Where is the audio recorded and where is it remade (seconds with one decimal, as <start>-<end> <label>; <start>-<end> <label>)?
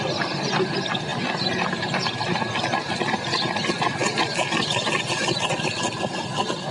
0.0-6.7 recorded